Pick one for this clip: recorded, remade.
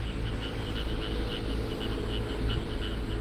recorded